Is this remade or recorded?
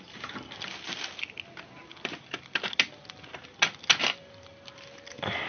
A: recorded